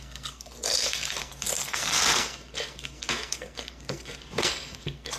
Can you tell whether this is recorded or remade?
remade